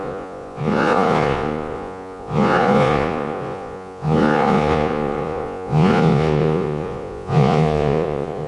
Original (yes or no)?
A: no